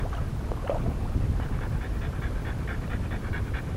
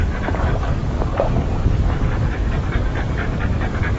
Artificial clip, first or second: second